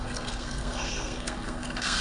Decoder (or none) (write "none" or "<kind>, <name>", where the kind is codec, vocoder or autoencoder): codec, SNAC